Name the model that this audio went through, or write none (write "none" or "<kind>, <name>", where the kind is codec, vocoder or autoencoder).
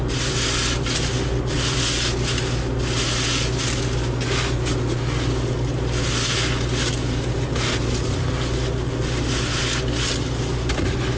none